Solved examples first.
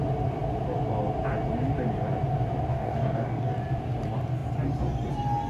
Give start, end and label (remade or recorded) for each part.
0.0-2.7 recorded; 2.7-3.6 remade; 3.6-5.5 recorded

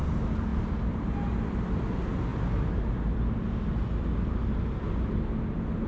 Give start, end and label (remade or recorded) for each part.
0.0-5.9 recorded

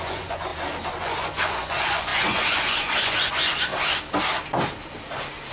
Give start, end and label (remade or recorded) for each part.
0.0-0.5 remade; 0.5-1.0 recorded; 1.0-3.7 remade; 3.7-5.5 recorded

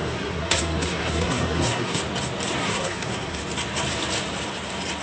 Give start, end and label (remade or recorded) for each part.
0.0-2.0 remade; 2.0-2.6 recorded; 2.6-3.4 remade; 3.4-5.0 recorded

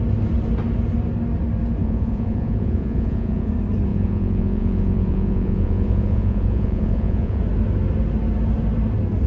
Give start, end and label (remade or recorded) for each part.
0.0-1.8 recorded; 1.8-3.5 remade; 3.5-3.9 recorded; 3.9-7.4 remade; 7.4-9.3 recorded

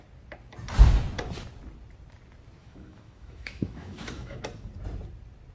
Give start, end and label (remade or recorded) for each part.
0.0-2.6 recorded; 2.6-4.4 remade; 4.4-5.5 recorded

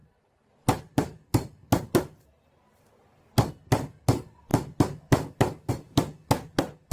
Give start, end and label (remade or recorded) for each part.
0.0-1.9 remade; 1.9-4.5 recorded; 4.5-5.7 remade; 5.7-6.9 recorded